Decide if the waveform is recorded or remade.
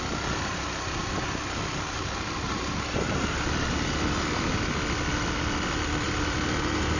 recorded